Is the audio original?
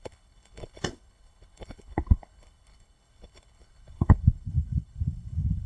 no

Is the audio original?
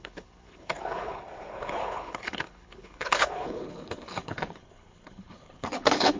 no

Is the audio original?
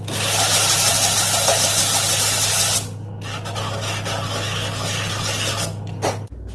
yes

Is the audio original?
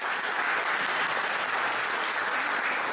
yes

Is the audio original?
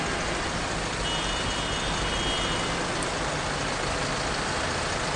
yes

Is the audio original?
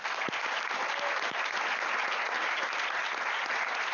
yes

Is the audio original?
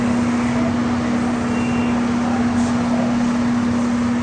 yes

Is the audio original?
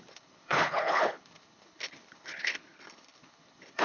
no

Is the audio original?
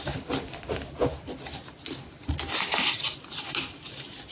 yes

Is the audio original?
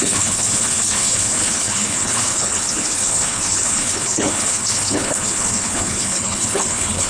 no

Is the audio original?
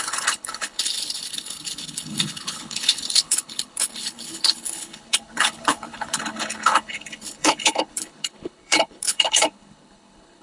no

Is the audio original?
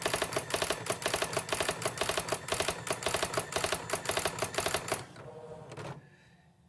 yes